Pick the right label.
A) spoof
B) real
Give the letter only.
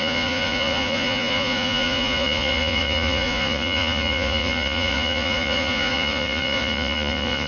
A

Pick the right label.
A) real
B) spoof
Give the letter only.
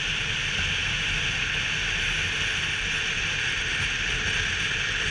A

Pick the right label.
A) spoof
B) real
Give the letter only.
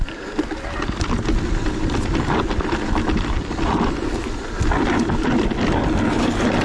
B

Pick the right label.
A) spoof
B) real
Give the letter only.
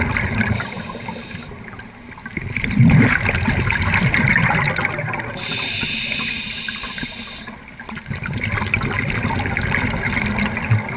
B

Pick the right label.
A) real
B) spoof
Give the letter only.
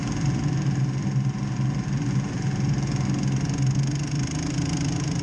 A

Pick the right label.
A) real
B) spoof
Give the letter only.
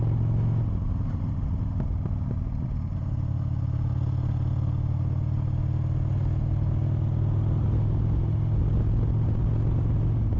A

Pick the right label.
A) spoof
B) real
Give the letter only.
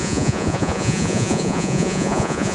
A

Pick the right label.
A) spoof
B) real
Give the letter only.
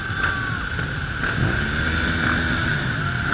B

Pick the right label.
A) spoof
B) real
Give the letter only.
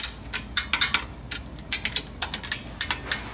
B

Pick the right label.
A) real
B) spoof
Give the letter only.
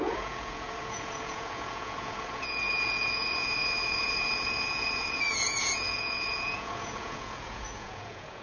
B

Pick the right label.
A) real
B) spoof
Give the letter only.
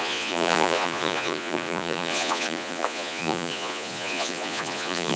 B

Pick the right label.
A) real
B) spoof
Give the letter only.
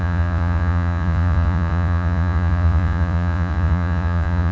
B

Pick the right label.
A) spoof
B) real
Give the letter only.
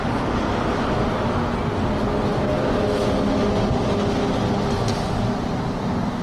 B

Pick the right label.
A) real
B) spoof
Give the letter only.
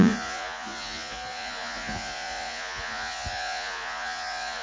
B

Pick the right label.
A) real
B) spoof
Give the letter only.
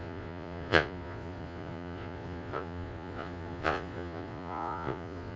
B